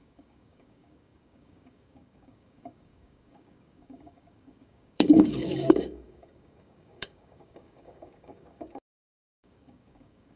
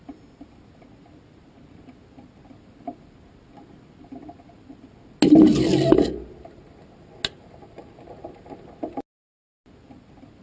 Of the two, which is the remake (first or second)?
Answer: first